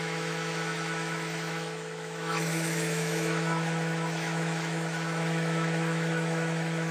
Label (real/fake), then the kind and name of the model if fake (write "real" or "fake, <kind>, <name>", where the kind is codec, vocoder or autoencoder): fake, autoencoder, DAC-VAE